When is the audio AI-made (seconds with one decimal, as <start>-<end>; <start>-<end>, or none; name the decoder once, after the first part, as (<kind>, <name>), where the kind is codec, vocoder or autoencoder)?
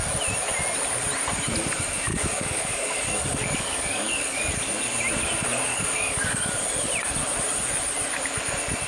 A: 2.1-4.5 (codec, DAC); 5.7-6.6